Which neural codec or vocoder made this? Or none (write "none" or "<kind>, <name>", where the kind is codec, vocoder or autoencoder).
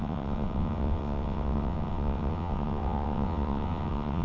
vocoder, WaveNeXt